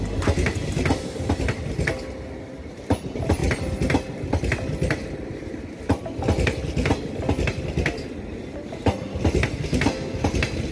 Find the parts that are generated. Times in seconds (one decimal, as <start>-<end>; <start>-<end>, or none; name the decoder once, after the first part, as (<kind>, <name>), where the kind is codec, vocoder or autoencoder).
none